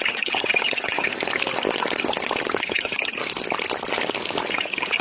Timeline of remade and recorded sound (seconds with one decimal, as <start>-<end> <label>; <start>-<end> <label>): 0.0-1.1 remade; 1.1-2.6 recorded; 2.6-3.2 remade; 3.2-4.5 recorded; 4.5-5.0 remade